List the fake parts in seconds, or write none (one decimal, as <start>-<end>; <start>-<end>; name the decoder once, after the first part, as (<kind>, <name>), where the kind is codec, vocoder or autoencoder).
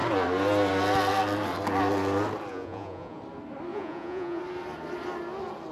2.5-3.2 (vocoder, Vocos); 3.7-4.4